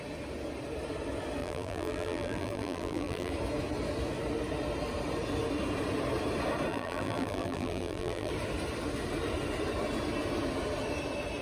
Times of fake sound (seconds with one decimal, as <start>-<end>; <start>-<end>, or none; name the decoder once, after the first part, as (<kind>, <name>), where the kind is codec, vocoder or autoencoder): 1.4-3.3 (vocoder, BigVGAN v2); 6.7-8.3